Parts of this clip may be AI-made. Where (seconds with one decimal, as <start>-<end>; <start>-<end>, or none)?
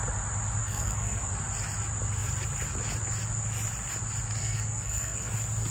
0.6-1.3; 4.4-5.3